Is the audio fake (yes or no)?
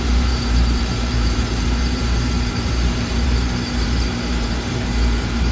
yes